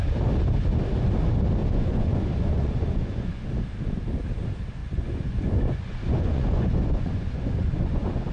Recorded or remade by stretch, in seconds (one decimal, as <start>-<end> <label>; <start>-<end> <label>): 0.0-1.6 recorded; 1.6-3.5 remade; 3.5-4.8 recorded; 4.8-8.3 remade